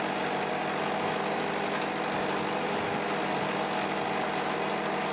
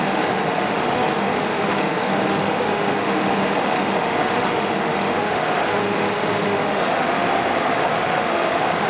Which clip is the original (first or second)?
first